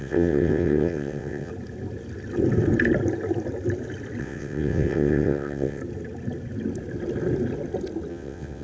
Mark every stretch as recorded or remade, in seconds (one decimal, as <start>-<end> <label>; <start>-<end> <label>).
0.0-1.5 remade; 1.5-4.2 recorded; 4.2-5.8 remade; 5.8-8.1 recorded; 8.1-8.6 remade